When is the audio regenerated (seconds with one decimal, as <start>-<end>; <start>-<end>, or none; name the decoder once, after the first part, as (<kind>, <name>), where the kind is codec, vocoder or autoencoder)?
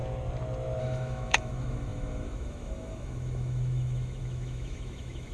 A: 0.8-5.3 (autoencoder, DAC-VAE)